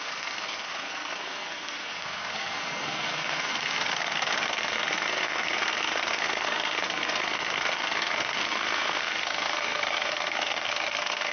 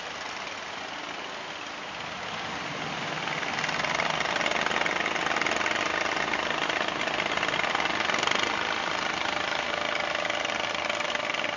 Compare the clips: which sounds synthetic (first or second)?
first